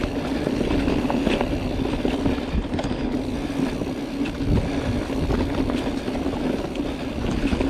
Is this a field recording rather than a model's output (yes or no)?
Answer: yes